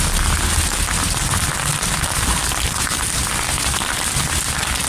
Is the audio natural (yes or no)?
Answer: yes